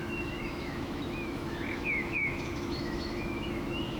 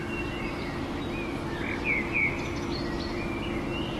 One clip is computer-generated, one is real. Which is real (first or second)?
second